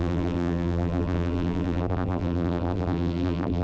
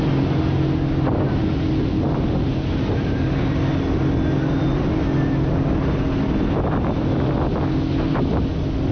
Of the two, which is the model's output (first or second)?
first